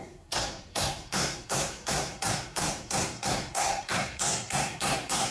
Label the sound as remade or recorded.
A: remade